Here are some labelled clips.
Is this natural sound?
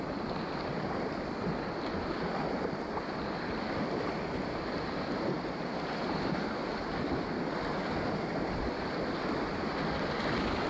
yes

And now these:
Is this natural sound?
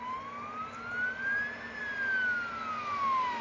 yes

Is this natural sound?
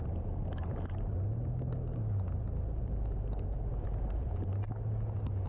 yes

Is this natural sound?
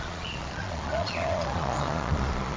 no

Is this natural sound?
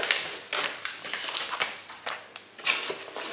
yes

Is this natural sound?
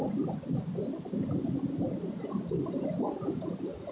yes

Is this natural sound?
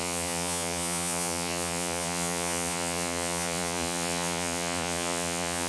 no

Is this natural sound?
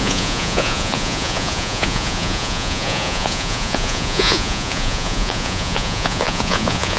no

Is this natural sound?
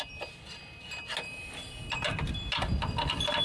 yes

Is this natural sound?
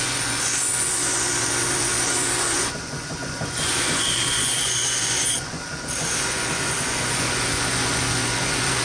no